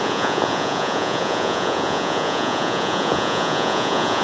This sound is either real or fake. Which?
fake